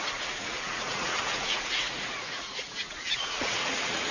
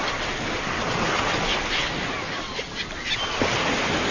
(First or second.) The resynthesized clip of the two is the first